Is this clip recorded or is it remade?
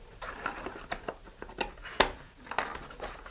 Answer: recorded